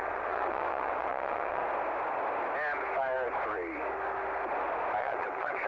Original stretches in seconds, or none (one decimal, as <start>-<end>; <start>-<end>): 1.6-5.0